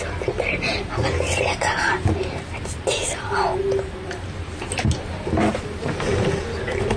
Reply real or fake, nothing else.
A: real